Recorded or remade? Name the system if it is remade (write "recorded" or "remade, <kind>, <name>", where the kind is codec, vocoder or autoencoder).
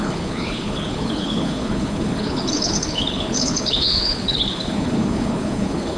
remade, codec, HILCodec